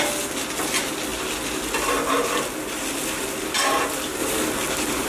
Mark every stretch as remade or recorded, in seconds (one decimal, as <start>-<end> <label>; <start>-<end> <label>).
0.0-5.1 recorded